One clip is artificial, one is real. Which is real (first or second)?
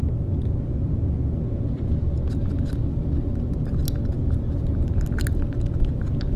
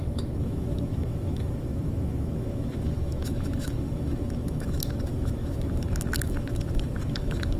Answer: first